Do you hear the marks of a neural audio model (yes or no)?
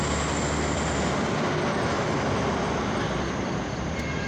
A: no